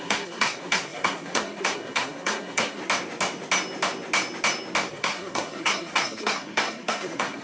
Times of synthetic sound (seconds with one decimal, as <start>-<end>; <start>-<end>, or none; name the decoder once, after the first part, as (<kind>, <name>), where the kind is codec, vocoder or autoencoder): 0.0-2.8 (codec, SNAC); 4.9-7.4